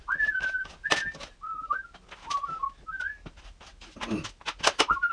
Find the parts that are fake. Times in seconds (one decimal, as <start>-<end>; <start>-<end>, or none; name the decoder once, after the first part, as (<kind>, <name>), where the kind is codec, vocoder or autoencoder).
none